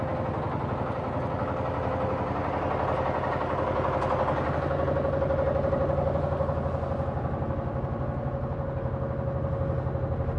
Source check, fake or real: real